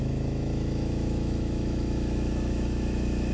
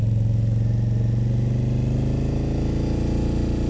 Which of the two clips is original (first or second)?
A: second